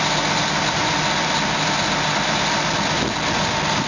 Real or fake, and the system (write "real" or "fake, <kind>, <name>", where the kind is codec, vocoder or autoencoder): real